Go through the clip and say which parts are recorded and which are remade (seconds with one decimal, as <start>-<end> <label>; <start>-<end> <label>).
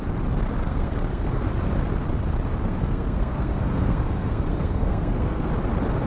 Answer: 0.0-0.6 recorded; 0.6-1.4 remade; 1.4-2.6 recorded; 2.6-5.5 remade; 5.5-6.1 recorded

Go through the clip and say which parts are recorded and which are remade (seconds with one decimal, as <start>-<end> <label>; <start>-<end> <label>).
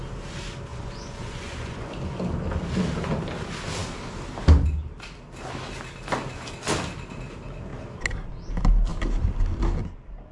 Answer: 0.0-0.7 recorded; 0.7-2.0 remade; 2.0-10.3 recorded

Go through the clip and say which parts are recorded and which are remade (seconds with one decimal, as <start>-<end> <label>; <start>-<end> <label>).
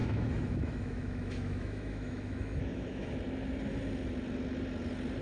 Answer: 0.0-3.1 remade; 3.1-5.2 recorded